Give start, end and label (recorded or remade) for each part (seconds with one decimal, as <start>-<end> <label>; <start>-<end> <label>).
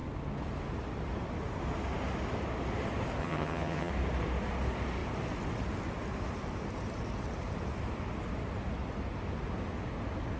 0.0-3.2 recorded; 3.2-3.9 remade; 3.9-10.4 recorded